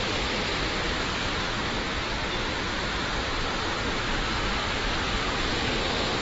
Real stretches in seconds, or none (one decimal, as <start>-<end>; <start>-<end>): 0.0-6.2